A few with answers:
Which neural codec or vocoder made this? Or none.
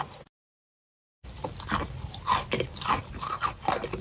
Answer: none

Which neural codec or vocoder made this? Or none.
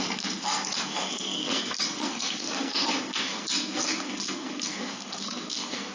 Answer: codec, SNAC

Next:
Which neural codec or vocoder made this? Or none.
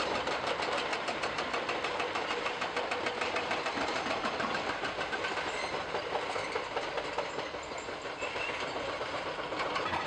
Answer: vocoder, BigVGAN v2